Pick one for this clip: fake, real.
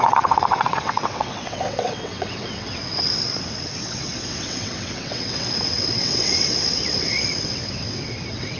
fake